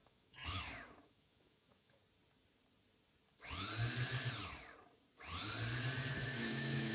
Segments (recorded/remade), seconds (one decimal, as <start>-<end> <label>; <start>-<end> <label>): 0.0-2.0 remade; 2.0-6.1 recorded; 6.1-6.9 remade